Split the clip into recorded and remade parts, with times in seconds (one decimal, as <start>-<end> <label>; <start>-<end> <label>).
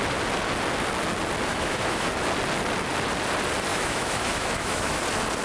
0.0-1.5 recorded; 1.5-2.1 remade; 2.1-3.7 recorded; 3.7-5.0 remade; 5.0-5.4 recorded